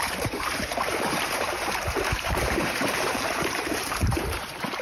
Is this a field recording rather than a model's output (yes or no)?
no